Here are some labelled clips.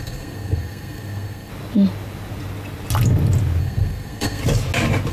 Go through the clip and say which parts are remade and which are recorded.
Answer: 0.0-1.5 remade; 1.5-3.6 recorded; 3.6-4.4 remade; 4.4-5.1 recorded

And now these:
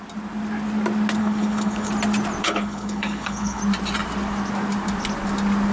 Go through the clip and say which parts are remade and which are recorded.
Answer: 0.0-1.2 recorded; 1.2-1.9 remade; 1.9-2.4 recorded; 2.4-3.6 remade; 3.6-5.7 recorded

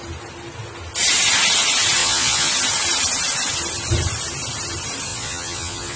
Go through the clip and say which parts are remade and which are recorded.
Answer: 0.0-2.0 recorded; 2.0-2.5 remade; 2.5-5.1 recorded; 5.1-6.0 remade

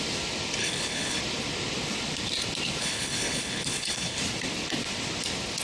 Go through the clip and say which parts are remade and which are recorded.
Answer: 0.0-0.6 recorded; 0.6-1.2 remade; 1.2-2.8 recorded; 2.8-4.2 remade; 4.2-5.6 recorded